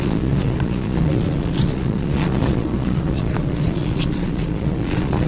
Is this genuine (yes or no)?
no